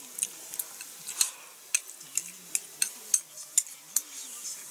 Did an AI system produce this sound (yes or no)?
no